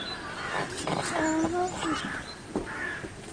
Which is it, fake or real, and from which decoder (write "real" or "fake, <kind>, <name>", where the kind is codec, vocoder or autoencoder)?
real